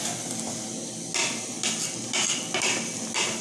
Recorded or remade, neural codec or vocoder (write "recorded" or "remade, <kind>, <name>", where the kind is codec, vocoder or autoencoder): recorded